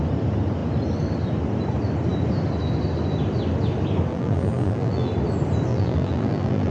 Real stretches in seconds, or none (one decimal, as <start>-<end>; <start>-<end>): 0.0-4.1; 5.1-5.7

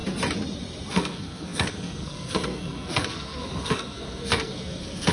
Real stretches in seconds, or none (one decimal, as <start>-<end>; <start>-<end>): 0.0-0.9

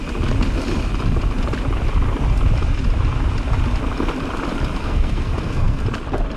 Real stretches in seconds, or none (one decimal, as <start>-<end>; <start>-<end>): 0.0-4.8; 5.8-6.4